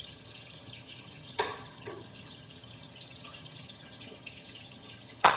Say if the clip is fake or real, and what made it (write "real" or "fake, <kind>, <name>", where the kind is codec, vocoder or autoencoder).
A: fake, vocoder, HiFi-GAN